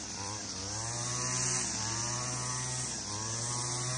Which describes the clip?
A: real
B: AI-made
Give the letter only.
A